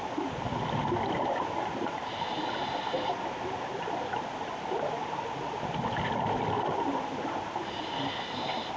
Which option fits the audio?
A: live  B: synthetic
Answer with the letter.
A